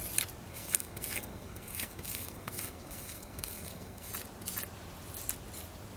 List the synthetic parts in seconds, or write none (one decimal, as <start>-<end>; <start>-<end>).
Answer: 0.5-4.1